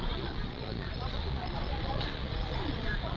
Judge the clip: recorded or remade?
remade